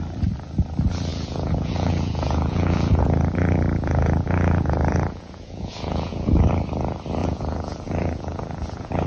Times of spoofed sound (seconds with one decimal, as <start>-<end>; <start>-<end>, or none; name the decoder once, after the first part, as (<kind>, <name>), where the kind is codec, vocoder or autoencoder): 1.1-6.3 (vocoder, Vocos); 7.2-9.1